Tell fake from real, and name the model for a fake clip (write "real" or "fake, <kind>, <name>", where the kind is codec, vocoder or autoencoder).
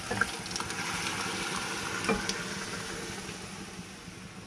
real